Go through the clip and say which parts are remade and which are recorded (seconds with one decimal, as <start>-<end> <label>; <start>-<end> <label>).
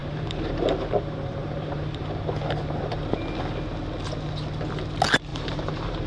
0.0-3.2 remade; 3.2-5.3 recorded; 5.3-6.1 remade